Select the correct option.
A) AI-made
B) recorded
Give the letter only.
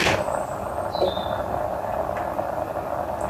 B